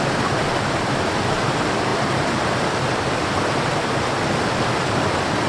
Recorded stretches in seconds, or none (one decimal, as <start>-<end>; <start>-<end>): 0.0-5.5

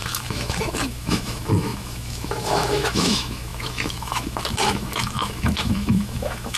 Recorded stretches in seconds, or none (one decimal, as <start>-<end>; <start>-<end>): none